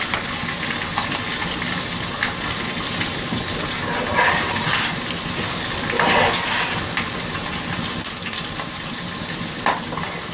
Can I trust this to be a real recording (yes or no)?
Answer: yes